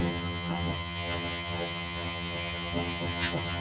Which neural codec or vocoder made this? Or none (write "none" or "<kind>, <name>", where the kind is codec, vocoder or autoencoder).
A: vocoder, HiFi-GAN